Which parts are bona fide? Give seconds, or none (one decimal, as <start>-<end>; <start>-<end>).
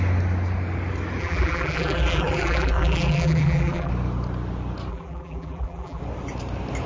0.0-1.2; 3.9-4.9; 6.0-6.9